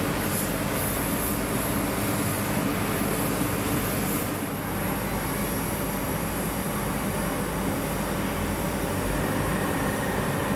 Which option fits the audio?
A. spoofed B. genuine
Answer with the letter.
B